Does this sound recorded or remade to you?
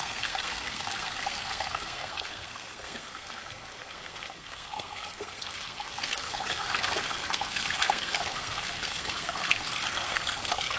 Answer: remade